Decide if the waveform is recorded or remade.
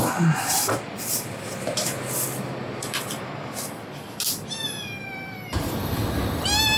recorded